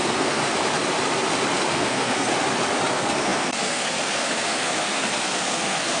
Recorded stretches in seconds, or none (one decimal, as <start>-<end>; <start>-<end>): 0.4-1.7; 2.3-2.9

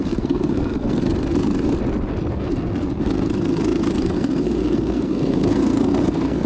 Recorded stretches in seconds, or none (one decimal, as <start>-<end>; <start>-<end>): 1.7-2.3

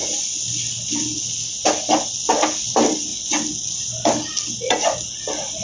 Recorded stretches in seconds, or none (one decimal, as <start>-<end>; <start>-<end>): 0.0-5.6